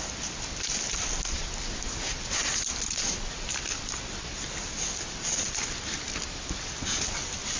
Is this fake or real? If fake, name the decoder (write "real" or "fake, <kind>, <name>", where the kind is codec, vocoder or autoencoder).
real